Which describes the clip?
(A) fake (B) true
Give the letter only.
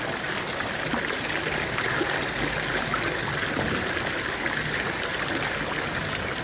B